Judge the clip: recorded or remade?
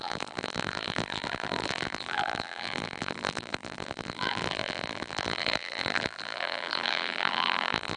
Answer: remade